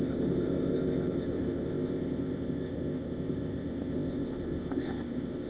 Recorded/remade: remade